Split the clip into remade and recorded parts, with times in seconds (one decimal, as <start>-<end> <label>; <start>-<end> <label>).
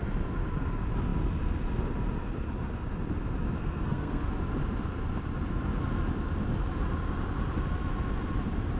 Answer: 0.0-3.6 recorded; 3.6-4.3 remade; 4.3-8.8 recorded